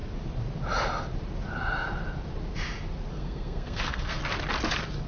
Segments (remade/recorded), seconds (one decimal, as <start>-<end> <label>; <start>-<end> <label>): 0.0-3.1 recorded; 3.1-4.2 remade; 4.2-5.1 recorded